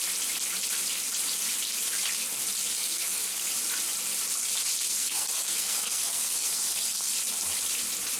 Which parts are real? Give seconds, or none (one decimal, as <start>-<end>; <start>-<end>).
0.0-2.7; 3.5-4.9; 7.1-8.2